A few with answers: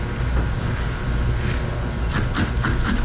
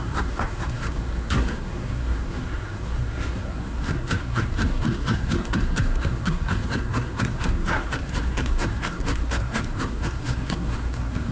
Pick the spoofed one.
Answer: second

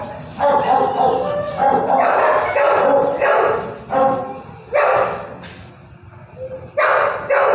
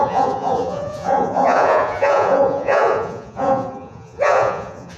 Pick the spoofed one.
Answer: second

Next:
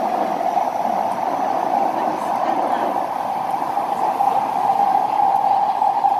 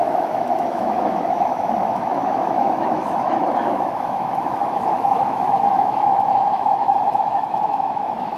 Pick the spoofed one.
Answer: second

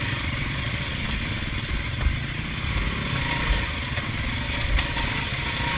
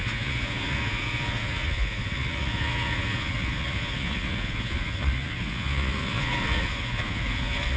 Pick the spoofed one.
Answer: second